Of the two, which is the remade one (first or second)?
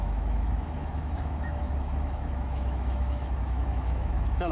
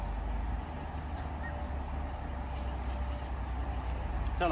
first